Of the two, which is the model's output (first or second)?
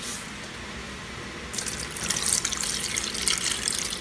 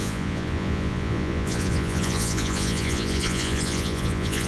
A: second